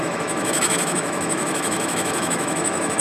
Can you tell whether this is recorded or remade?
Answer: remade